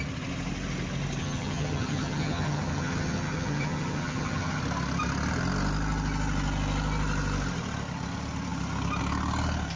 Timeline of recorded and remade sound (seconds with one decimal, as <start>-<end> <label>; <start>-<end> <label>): 0.0-1.2 recorded; 1.2-4.6 remade; 4.6-9.8 recorded